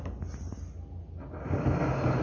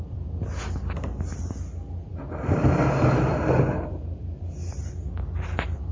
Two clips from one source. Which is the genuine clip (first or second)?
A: first